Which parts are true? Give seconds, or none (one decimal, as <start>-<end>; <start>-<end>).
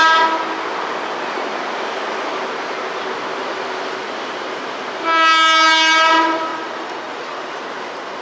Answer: 0.0-6.5; 7.5-8.2